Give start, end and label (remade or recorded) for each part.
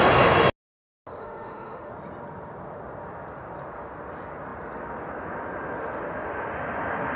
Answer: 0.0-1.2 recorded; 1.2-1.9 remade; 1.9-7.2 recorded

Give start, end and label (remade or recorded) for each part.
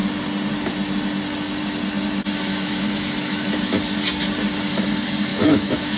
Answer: 0.0-2.5 recorded; 2.5-3.8 remade; 3.8-5.3 recorded; 5.3-6.0 remade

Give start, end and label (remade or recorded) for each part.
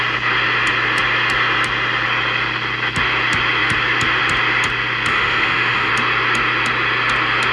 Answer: 0.0-5.1 recorded; 5.1-5.9 remade; 5.9-7.5 recorded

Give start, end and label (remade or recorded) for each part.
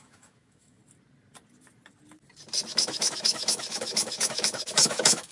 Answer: 0.0-0.8 remade; 0.8-2.7 recorded; 2.7-5.3 remade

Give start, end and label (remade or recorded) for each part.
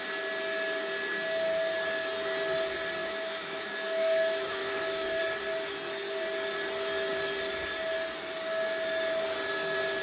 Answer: 0.0-3.0 recorded; 3.0-5.2 remade; 5.2-10.0 recorded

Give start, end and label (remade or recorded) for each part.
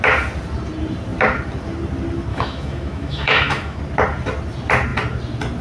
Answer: 0.0-2.3 recorded; 2.3-3.8 remade; 3.8-5.6 recorded